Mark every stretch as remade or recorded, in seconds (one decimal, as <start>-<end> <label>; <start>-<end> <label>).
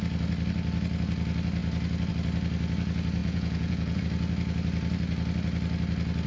0.0-3.2 recorded; 3.2-4.0 remade; 4.0-6.3 recorded